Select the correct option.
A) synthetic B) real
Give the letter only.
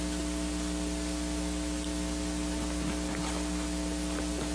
B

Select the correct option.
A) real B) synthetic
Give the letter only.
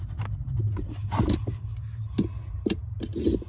B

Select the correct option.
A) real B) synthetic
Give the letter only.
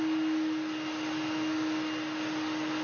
A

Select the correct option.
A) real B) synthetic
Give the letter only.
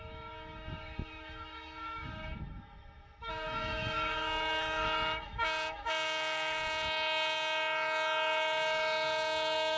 B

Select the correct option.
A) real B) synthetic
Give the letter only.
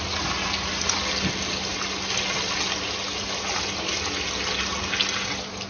A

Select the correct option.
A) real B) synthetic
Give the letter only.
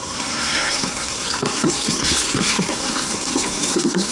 B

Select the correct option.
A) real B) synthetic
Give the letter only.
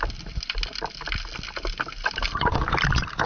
A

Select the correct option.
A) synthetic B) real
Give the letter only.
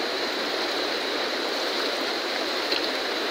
A